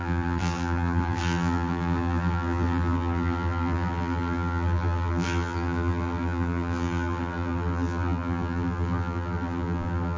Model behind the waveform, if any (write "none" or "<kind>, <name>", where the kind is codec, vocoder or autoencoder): vocoder, BigVGAN v2